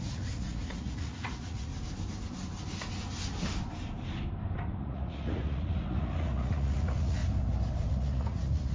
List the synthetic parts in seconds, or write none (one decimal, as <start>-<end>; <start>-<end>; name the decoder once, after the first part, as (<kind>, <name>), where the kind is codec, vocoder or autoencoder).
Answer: 0.0-1.7 (vocoder, Vocos); 4.8-7.2; 7.9-8.7